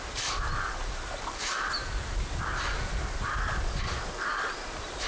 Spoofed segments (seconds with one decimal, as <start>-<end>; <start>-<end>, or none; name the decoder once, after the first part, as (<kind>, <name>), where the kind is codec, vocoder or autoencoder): none